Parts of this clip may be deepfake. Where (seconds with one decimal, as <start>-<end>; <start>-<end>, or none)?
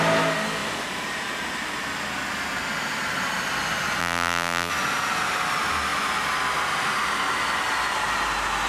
4.0-4.7